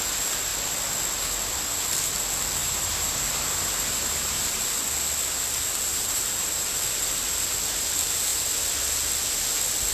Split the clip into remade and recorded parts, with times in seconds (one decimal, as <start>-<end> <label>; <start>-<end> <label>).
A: 0.0-2.6 recorded; 2.6-4.6 remade; 4.6-5.9 recorded; 5.9-6.8 remade; 6.8-9.9 recorded